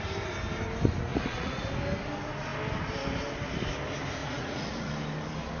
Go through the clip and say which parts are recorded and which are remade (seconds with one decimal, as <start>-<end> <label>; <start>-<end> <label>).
0.0-1.1 recorded; 1.1-1.7 remade; 1.7-4.2 recorded; 4.2-4.9 remade; 4.9-5.6 recorded